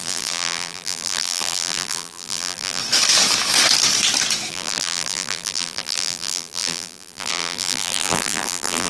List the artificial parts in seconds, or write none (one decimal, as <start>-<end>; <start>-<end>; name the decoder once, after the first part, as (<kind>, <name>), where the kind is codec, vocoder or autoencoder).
0.0-2.8 (vocoder, BigVGAN v2); 4.5-8.9